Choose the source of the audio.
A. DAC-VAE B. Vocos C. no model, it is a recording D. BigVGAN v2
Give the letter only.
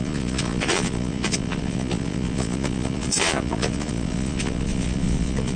B